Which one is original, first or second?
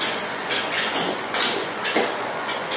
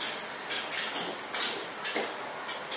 second